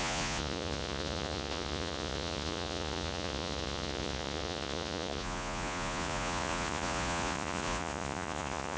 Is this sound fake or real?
fake